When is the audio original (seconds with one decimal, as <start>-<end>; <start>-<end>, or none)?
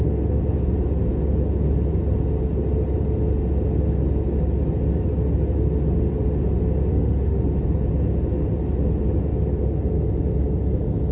0.0-6.9; 7.4-11.1